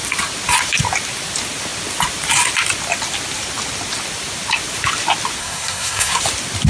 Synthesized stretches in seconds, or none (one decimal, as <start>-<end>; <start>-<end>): 5.4-6.2